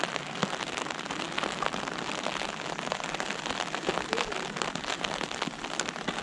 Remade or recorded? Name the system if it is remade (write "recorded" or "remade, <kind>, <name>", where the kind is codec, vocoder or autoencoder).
recorded